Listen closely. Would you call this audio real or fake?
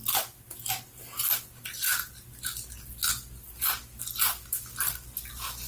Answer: real